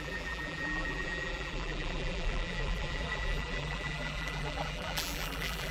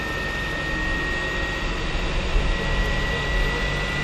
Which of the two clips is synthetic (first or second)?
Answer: first